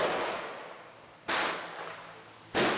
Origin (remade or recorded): recorded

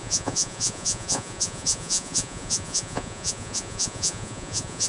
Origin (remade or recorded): remade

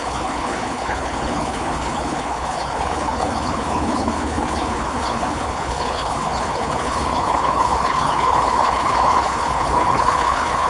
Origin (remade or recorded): remade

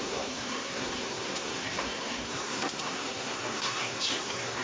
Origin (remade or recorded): remade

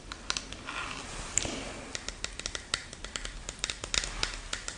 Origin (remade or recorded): recorded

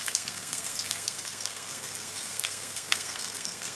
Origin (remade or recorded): remade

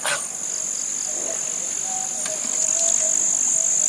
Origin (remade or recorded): recorded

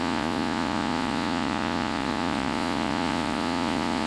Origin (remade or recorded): remade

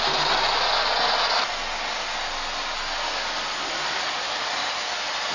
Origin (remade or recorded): recorded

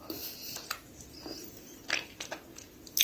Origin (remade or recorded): recorded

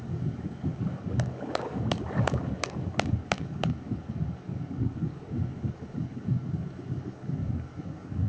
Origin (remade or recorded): remade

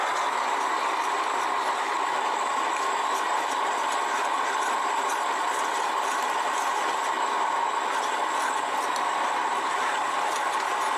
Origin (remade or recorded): recorded